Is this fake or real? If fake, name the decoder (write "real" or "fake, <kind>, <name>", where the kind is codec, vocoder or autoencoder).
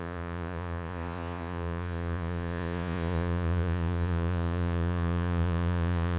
fake, vocoder, Vocos